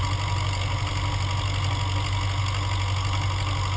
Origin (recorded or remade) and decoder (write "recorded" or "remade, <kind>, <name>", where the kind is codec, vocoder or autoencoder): recorded